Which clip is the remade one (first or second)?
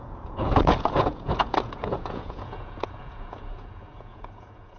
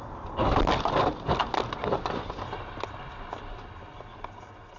first